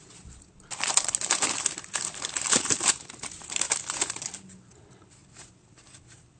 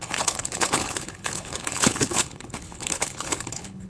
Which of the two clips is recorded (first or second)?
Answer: first